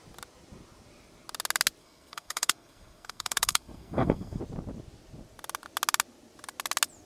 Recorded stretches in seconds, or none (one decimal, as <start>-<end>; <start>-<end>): 0.0-1.8; 4.4-7.1